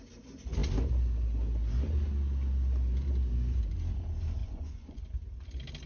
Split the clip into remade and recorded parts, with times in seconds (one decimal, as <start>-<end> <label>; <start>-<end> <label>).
0.0-4.4 recorded; 4.4-5.0 remade; 5.0-5.9 recorded